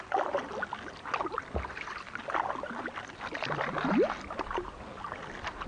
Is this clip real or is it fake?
real